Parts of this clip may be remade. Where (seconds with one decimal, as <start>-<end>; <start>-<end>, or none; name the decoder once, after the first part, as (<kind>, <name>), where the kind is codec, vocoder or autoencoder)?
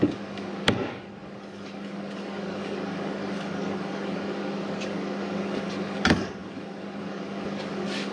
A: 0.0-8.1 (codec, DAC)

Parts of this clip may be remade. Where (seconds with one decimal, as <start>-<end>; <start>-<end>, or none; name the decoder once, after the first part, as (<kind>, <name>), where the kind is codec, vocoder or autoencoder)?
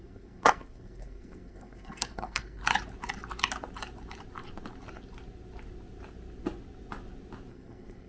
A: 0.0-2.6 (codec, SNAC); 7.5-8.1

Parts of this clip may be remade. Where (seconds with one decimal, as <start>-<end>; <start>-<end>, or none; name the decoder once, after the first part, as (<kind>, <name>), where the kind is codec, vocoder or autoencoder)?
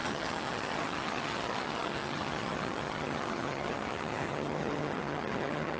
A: 0.0-5.8 (vocoder, HiFi-GAN)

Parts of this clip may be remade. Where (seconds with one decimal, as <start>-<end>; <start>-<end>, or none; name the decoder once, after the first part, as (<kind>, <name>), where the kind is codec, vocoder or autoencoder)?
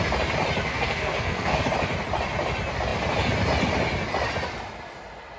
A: 0.7-1.6 (codec, SNAC)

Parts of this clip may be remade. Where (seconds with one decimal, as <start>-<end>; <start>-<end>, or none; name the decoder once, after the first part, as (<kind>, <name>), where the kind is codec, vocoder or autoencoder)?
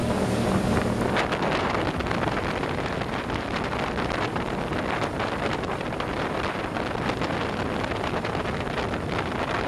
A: 1.4-9.7 (vocoder, BigVGAN v2)